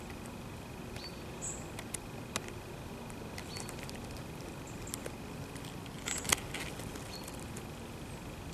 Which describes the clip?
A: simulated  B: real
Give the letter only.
B